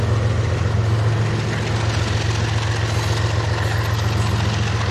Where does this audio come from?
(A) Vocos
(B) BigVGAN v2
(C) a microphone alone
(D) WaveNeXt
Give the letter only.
C